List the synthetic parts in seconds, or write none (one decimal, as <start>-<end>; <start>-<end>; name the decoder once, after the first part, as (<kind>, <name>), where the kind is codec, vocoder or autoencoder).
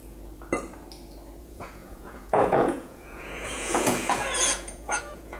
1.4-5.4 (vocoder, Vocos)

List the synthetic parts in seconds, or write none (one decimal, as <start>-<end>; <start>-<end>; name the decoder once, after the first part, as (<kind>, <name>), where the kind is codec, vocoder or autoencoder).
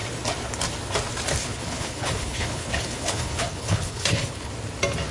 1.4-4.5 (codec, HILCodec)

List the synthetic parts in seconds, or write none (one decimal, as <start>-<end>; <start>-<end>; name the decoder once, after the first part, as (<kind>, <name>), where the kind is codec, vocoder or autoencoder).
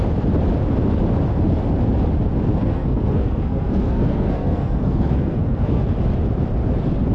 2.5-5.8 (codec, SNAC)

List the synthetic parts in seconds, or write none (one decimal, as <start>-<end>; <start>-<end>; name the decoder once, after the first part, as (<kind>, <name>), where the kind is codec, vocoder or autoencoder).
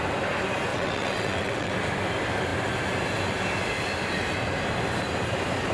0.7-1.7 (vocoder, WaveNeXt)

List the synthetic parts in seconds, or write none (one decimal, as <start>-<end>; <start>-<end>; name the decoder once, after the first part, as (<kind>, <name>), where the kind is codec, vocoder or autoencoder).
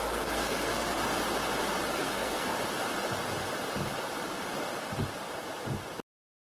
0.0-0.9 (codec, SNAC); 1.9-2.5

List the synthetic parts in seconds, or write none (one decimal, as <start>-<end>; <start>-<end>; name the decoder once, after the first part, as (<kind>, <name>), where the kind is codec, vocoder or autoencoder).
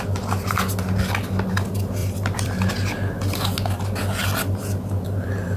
2.0-2.7 (vocoder, BigVGAN v2)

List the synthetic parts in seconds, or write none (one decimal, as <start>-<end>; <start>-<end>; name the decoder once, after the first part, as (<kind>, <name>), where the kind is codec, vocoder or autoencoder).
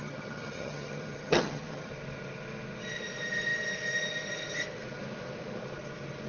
0.0-1.9 (vocoder, HiFi-GAN)